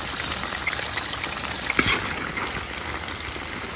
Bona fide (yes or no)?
yes